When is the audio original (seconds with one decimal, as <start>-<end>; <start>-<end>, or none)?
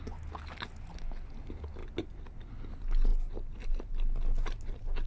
0.0-5.1